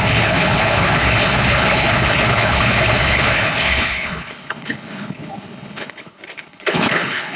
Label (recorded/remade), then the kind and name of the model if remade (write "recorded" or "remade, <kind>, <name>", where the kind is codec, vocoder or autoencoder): remade, codec, HILCodec